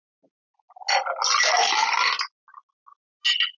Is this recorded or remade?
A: recorded